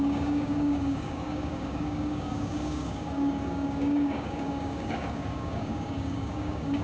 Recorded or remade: remade